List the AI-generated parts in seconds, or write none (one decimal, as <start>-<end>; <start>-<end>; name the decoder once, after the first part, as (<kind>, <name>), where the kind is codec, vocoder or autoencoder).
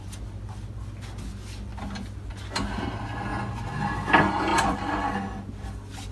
4.5-5.1 (vocoder, BigVGAN v2)